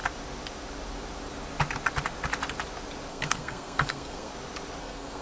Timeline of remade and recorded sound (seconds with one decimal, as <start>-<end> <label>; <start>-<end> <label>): 0.0-3.1 recorded; 3.1-4.3 remade; 4.3-4.8 recorded; 4.8-5.2 remade

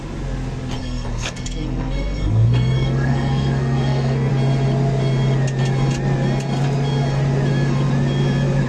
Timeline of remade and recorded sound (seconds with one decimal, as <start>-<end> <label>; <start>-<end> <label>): 0.0-0.8 recorded; 0.8-4.3 remade; 4.3-8.7 recorded

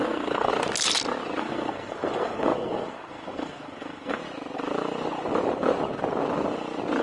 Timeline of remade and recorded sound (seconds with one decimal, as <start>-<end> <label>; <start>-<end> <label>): 0.0-0.5 remade; 0.5-1.4 recorded; 1.4-4.2 remade; 4.2-7.0 recorded

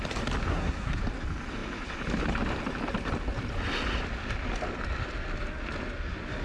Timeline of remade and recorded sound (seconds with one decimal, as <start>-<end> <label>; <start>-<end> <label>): 0.0-0.5 recorded; 0.5-1.0 remade; 1.0-6.4 recorded